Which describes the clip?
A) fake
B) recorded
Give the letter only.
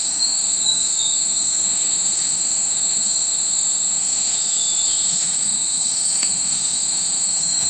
A